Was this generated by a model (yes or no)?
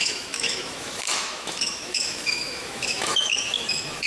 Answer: yes